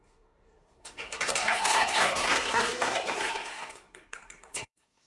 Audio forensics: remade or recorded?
remade